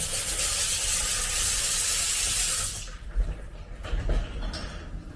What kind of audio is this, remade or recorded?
recorded